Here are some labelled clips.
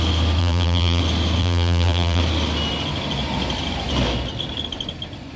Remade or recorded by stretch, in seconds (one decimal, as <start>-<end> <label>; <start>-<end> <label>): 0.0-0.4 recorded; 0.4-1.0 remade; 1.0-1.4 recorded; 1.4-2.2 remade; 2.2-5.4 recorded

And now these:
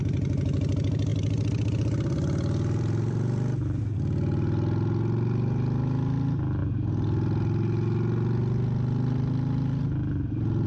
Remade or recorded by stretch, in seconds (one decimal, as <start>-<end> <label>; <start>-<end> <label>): 0.0-1.1 recorded; 1.1-3.8 remade; 3.8-10.7 recorded

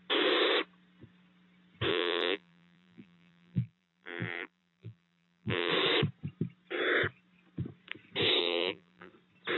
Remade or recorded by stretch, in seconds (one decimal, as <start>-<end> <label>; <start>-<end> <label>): 0.0-1.9 recorded; 1.9-5.7 remade; 5.7-8.4 recorded; 8.4-9.1 remade; 9.1-9.6 recorded

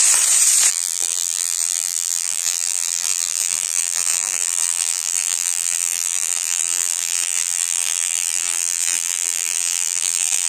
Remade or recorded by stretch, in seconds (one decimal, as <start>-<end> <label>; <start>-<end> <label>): 0.0-0.7 recorded; 0.7-10.5 remade

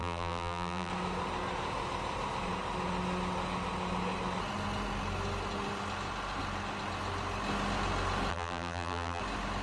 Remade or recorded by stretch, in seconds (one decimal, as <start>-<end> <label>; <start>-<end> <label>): 0.0-0.9 remade; 0.9-8.3 recorded; 8.3-9.2 remade; 9.2-9.6 recorded

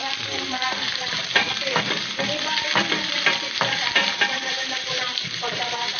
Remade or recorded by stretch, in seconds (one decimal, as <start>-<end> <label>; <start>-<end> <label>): 0.0-1.5 remade; 1.5-4.0 recorded; 4.0-6.0 remade

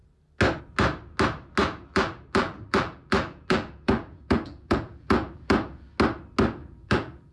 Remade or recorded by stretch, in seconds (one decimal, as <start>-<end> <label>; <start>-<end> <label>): 0.0-1.6 recorded; 1.6-5.9 remade; 5.9-6.6 recorded; 6.6-7.3 remade

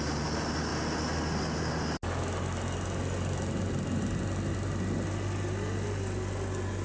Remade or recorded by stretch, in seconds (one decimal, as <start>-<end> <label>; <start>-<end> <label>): 0.0-6.8 recorded